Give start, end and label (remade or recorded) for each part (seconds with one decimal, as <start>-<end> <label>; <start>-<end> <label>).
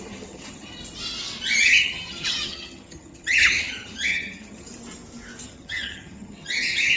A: 0.0-0.8 remade; 0.8-1.6 recorded; 1.6-4.7 remade; 4.7-5.4 recorded; 5.4-7.0 remade